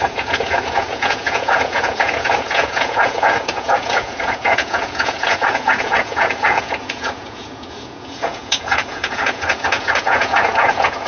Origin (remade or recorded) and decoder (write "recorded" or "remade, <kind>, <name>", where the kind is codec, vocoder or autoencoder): remade, vocoder, Vocos